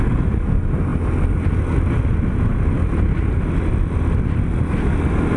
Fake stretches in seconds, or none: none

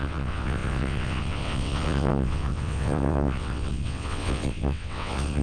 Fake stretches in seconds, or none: 0.0-5.4 (vocoder, WaveNeXt)

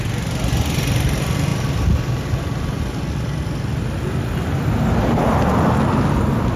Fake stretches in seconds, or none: none

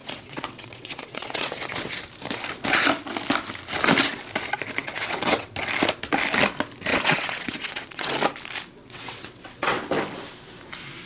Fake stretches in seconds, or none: 0.0-2.0 (vocoder, WaveNeXt); 4.8-5.5; 6.9-8.1; 8.8-9.8

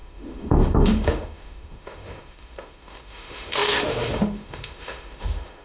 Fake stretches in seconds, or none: 0.0-5.6 (autoencoder, DAC-VAE)

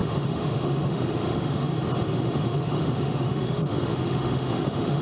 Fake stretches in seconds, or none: 0.0-1.7 (autoencoder, DAC-VAE); 2.3-5.0

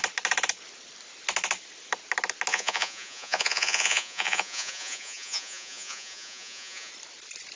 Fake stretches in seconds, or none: 2.5-6.9 (vocoder, Vocos)